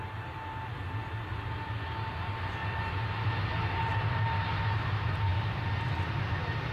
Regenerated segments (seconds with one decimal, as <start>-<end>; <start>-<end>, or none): 3.9-4.5; 5.3-6.7